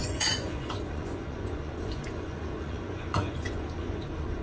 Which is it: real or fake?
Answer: fake